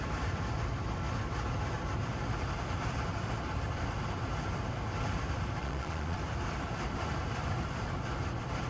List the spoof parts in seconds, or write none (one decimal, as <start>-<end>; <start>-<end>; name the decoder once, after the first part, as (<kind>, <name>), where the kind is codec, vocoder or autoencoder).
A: 5.6-6.2 (vocoder, Vocos)